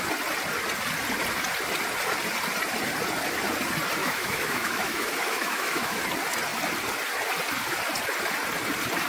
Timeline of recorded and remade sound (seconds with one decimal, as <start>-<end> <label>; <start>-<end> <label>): 0.0-4.0 recorded; 4.0-6.0 remade; 6.0-9.1 recorded